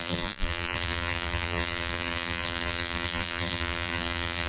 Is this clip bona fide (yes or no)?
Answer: no